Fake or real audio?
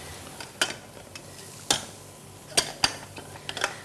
real